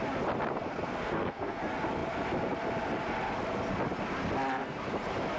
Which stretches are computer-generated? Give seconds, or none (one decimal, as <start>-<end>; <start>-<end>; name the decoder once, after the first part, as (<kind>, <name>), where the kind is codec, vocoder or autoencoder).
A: 0.6-1.6 (codec, SNAC)